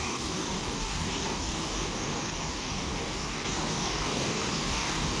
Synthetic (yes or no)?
yes